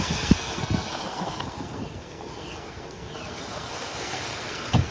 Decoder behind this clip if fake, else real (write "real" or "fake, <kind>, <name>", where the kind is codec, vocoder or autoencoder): fake, codec, SNAC